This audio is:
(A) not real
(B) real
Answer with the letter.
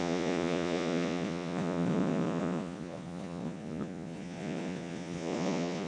A